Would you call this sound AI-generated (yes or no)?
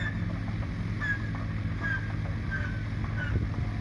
no